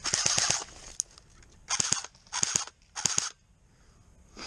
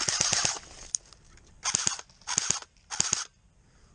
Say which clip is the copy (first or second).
second